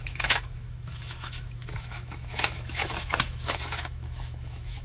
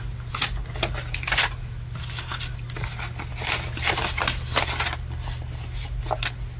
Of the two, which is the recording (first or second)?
second